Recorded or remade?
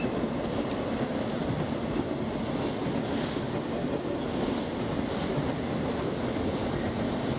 recorded